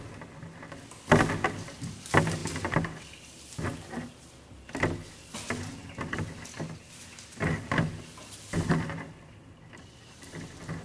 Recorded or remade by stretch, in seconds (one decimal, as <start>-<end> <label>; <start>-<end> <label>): 0.0-10.8 recorded